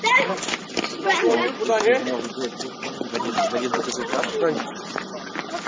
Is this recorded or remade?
recorded